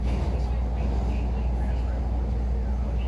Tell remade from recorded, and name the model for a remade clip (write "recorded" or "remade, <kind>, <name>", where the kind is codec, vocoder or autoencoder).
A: recorded